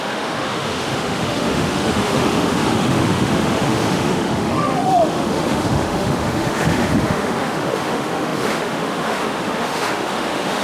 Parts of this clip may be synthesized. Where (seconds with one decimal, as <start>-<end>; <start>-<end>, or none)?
0.0-10.6